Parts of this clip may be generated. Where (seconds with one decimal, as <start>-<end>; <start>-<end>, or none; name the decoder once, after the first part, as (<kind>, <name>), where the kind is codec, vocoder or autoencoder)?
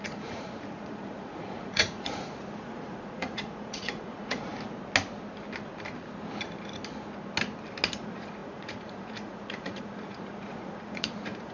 0.0-4.5 (vocoder, Vocos); 8.0-11.5